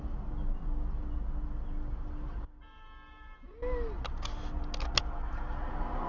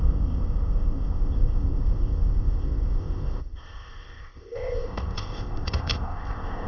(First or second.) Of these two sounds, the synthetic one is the second